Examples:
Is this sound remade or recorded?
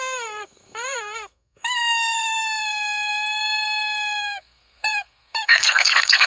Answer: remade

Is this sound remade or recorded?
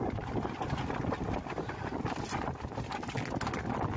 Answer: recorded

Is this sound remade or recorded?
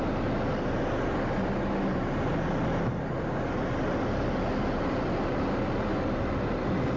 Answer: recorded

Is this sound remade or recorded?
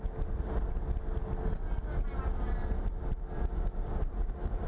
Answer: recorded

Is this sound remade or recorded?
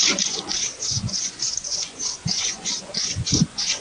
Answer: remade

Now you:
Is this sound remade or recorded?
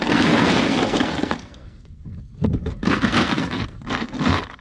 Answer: remade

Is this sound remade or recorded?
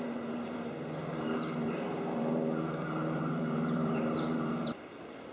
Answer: remade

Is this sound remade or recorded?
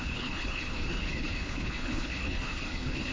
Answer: remade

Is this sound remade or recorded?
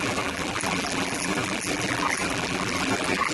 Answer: remade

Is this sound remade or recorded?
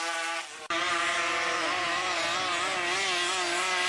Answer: recorded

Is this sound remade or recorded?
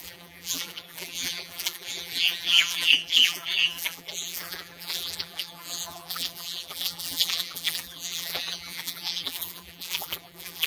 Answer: remade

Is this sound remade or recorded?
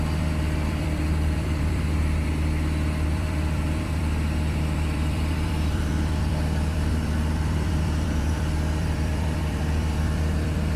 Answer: remade